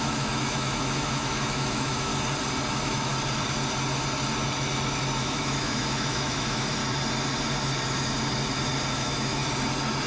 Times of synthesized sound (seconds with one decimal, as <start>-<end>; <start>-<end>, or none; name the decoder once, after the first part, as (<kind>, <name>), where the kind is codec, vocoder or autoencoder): 0.0-2.1 (autoencoder, DAC-VAE); 2.7-3.1; 5.2-6.8; 8.9-9.4